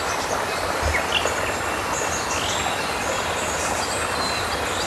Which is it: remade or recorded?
recorded